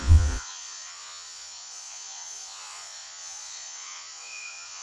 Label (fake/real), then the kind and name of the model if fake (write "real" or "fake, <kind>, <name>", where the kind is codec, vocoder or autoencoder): fake, vocoder, Vocos